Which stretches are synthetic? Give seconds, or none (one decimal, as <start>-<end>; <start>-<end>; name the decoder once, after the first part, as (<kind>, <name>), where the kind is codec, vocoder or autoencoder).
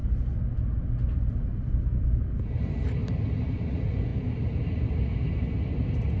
none